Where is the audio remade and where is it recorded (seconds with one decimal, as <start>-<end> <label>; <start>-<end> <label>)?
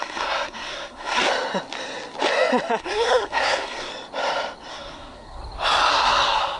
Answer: 0.0-1.2 remade; 1.2-2.8 recorded; 2.8-3.9 remade; 3.9-4.7 recorded; 4.7-5.4 remade; 5.4-5.9 recorded; 5.9-6.6 remade